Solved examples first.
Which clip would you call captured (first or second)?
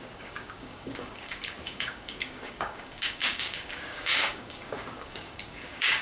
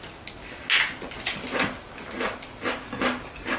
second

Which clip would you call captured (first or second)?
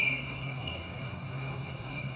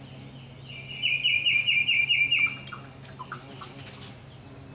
second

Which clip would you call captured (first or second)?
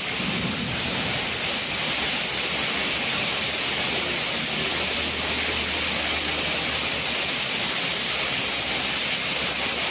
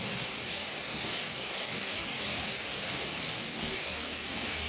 first